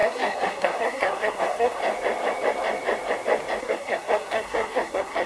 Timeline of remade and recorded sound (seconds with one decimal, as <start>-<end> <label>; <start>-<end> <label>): 0.0-1.8 remade; 1.8-3.6 recorded; 3.6-5.3 remade